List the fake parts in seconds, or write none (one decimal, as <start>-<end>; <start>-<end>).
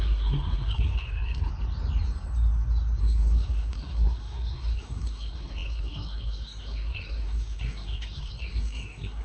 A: 0.0-1.5; 3.0-9.2